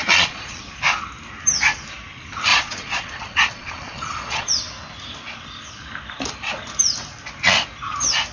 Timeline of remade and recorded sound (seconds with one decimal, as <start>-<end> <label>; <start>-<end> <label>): 0.0-0.6 remade; 0.6-2.5 recorded; 2.5-4.5 remade; 4.5-8.3 recorded